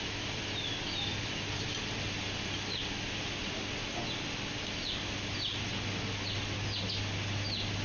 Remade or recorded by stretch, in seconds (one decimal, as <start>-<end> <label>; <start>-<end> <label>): 0.0-7.8 recorded